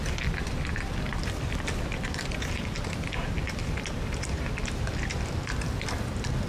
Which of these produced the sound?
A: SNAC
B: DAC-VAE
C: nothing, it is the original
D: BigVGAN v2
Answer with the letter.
D